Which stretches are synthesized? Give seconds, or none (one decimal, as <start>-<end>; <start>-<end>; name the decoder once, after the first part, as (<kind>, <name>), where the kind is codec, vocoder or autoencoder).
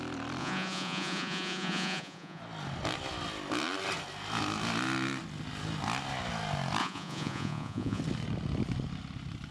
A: 0.4-2.4 (vocoder, Vocos); 6.8-8.0